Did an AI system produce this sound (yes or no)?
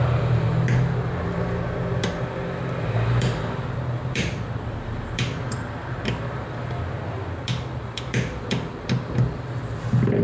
yes